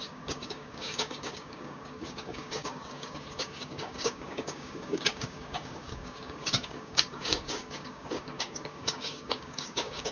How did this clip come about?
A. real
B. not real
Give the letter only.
B